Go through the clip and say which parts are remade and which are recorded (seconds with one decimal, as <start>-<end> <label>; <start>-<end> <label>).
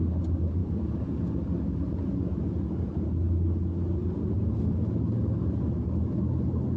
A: 0.0-6.8 recorded